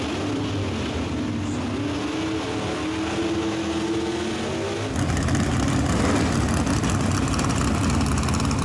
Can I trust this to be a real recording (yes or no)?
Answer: yes